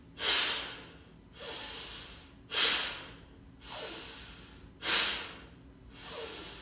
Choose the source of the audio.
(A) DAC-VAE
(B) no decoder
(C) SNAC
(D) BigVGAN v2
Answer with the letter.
B